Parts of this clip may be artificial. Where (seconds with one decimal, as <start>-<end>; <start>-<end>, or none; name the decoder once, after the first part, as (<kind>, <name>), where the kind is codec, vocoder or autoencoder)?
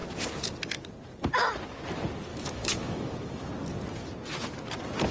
2.3-3.5 (autoencoder, DAC-VAE)